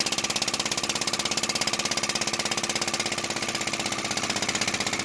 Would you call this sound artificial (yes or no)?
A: no